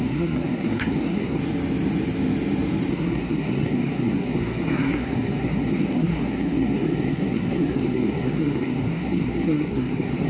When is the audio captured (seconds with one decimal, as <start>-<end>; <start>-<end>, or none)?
1.4-2.9